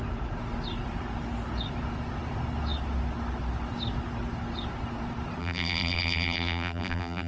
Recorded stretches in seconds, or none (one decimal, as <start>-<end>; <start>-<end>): 0.0-5.4